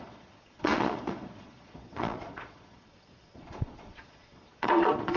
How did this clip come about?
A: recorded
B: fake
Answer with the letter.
B